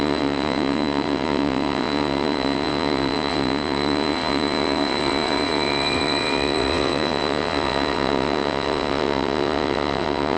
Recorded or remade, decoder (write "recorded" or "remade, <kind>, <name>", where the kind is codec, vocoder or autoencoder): remade, vocoder, WaveNeXt